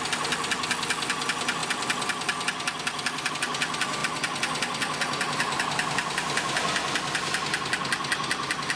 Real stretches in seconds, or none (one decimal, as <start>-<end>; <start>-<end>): 0.0-8.8